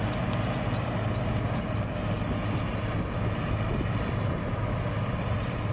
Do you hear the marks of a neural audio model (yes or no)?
no